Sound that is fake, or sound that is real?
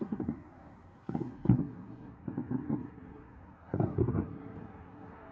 fake